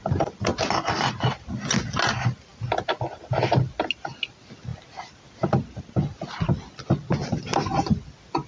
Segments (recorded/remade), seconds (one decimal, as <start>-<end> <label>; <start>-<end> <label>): 0.0-8.5 recorded